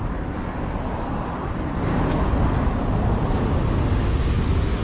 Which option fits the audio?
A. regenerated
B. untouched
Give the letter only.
B